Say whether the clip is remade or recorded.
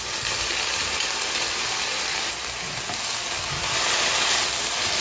recorded